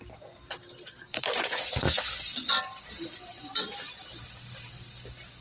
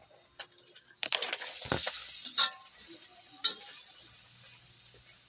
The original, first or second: second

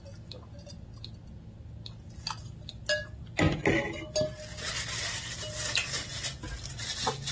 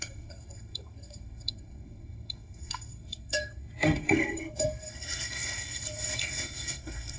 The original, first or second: first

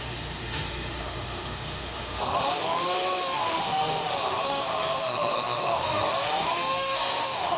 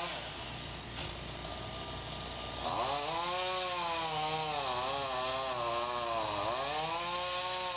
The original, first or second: second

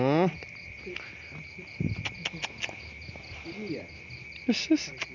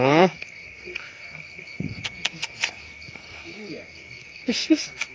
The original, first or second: first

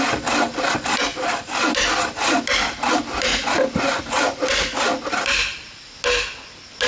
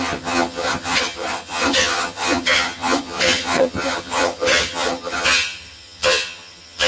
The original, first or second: first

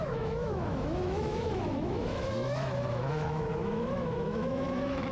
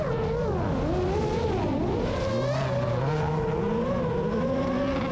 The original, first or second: second